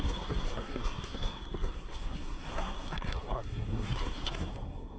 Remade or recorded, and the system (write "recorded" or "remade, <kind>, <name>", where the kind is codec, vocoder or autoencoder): remade, codec, SNAC